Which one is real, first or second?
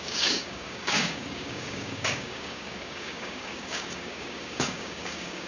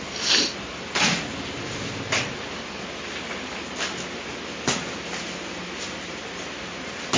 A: second